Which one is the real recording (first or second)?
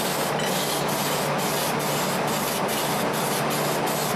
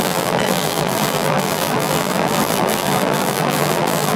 first